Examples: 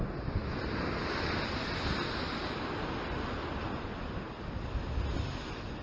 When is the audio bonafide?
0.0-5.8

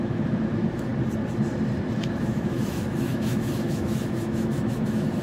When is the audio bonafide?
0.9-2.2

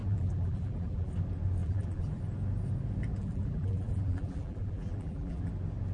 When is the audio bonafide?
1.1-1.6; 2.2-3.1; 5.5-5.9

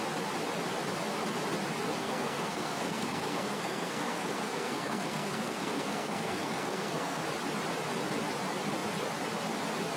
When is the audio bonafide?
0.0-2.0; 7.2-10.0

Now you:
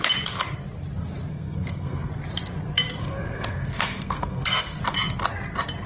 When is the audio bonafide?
0.0-1.3; 2.1-3.0; 4.8-5.9

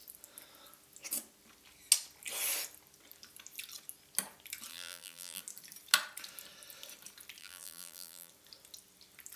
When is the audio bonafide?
0.0-4.7; 5.4-7.4; 8.3-9.4

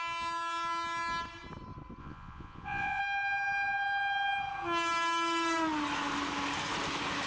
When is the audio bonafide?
0.0-2.0; 3.0-7.3